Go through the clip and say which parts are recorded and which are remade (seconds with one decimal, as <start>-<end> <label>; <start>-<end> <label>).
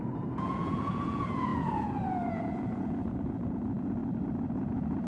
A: 0.0-4.0 remade; 4.0-4.5 recorded; 4.5-5.1 remade